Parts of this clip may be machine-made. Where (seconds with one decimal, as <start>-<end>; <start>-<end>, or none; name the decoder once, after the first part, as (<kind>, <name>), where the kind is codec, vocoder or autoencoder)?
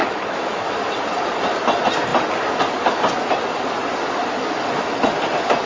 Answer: 0.0-0.7 (autoencoder, DAC-VAE)